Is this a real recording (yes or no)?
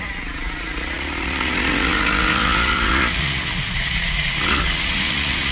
no